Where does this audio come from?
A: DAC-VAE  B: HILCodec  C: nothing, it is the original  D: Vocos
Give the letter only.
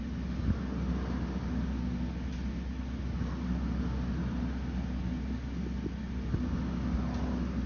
C